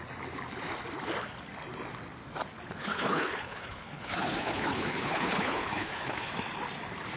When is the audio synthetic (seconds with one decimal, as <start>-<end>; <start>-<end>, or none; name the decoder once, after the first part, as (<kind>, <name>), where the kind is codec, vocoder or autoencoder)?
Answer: 2.7-6.3 (codec, HILCodec)